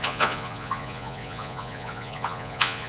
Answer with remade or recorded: remade